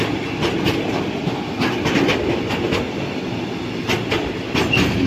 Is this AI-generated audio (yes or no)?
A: no